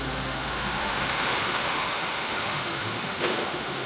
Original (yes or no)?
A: no